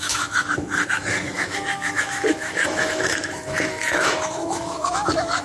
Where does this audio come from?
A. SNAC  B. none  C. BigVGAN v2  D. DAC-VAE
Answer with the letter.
D